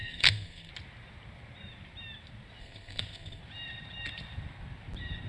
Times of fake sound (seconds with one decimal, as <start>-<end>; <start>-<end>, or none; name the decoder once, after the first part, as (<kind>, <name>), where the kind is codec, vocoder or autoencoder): 0.0-0.7 (codec, SNAC); 2.6-3.4